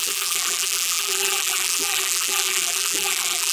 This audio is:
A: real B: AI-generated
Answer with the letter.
B